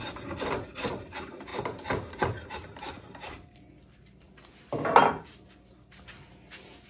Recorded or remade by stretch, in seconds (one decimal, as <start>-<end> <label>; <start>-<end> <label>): 0.0-6.9 recorded